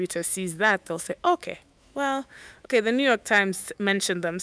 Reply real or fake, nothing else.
fake